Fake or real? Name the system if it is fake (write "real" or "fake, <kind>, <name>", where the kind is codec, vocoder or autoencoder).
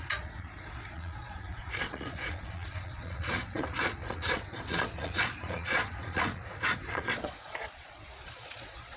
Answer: fake, vocoder, Vocos